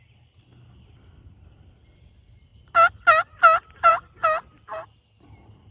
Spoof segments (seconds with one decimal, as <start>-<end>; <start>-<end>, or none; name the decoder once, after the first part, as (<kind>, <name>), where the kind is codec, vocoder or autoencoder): none